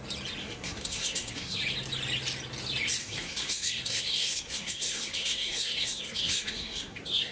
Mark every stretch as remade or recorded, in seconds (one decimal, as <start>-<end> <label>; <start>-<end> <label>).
0.0-0.4 recorded; 0.4-1.6 remade; 1.6-3.0 recorded; 3.0-7.3 remade